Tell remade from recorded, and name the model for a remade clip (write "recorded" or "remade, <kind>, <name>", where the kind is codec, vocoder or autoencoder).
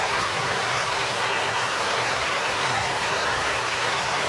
remade, codec, SNAC